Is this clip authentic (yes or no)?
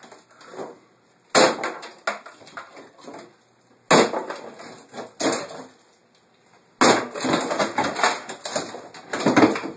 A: yes